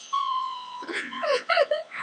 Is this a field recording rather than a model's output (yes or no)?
no